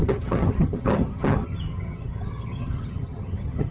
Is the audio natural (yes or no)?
no